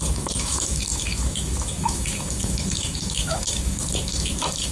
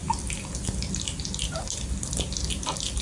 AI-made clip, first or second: first